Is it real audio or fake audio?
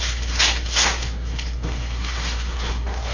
fake